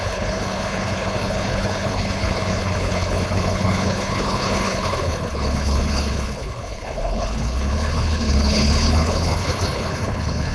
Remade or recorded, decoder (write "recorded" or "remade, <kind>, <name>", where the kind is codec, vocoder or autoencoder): remade, codec, HILCodec